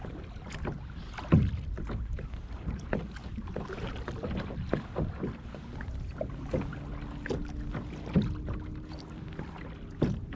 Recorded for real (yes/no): yes